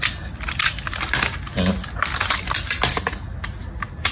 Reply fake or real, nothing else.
real